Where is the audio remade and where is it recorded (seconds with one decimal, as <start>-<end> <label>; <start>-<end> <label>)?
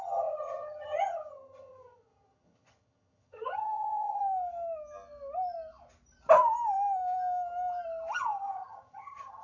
0.0-4.2 remade; 4.2-8.1 recorded; 8.1-9.4 remade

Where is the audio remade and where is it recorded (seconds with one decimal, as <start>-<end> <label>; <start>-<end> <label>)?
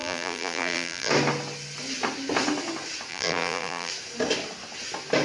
0.0-1.1 remade; 1.1-3.1 recorded; 3.1-3.9 remade; 3.9-5.2 recorded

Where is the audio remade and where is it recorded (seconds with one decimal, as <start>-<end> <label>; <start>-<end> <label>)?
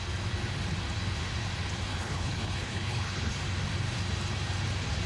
0.0-1.9 recorded; 1.9-3.4 remade; 3.4-5.1 recorded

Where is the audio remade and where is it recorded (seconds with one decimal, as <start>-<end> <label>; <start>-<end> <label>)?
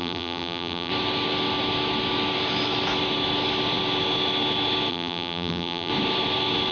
0.0-0.9 remade; 0.9-4.9 recorded; 4.9-5.9 remade; 5.9-6.7 recorded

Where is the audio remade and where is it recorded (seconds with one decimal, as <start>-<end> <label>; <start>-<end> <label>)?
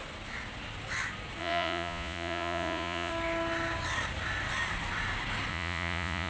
0.0-1.4 recorded; 1.4-3.1 remade; 3.1-5.5 recorded; 5.5-6.3 remade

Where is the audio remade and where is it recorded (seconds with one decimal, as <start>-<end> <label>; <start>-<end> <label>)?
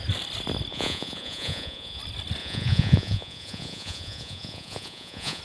0.0-0.7 recorded; 0.7-2.0 remade; 2.0-2.4 recorded; 2.4-5.4 remade